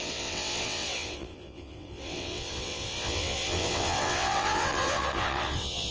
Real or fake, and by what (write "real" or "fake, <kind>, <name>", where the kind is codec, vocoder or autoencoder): fake, vocoder, WaveNeXt